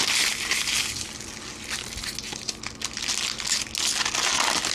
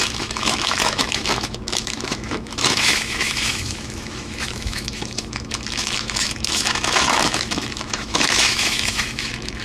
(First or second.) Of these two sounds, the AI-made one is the second